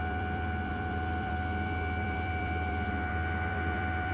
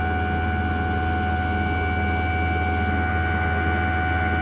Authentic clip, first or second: second